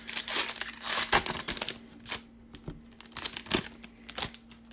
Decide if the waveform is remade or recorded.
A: recorded